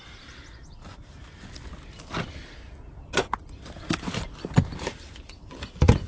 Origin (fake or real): real